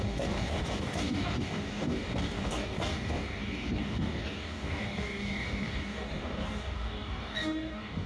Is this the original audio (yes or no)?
no